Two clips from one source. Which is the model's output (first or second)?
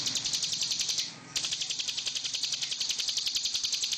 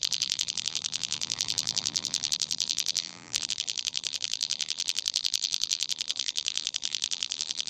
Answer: second